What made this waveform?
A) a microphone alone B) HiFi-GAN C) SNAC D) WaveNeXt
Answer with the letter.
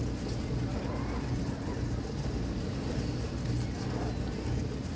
A